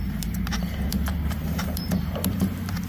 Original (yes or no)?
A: no